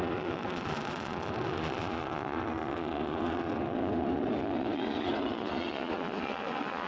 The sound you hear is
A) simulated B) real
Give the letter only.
A